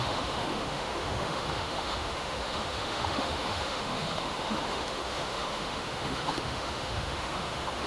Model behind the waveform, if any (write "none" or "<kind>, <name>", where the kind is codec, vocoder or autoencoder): autoencoder, DAC-VAE